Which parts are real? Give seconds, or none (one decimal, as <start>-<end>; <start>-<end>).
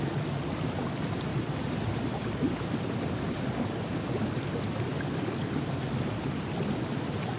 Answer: 0.0-1.3; 5.7-7.4